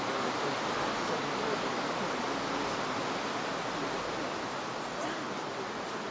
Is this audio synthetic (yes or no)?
no